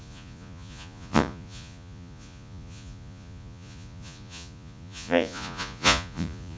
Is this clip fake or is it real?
fake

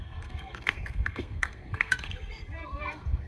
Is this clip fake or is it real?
fake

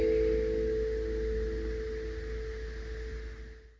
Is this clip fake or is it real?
real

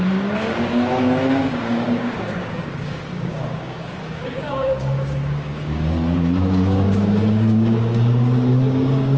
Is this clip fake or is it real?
fake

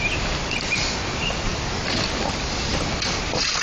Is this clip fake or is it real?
real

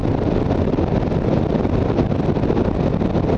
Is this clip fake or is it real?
real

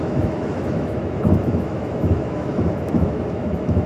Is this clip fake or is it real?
fake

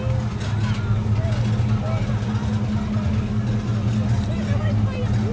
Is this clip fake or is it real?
real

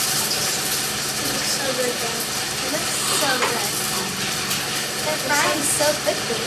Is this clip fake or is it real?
real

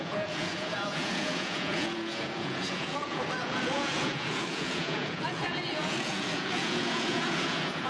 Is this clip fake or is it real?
fake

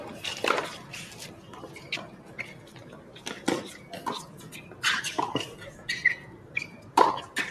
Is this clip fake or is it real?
real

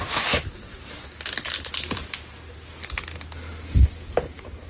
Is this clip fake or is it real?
real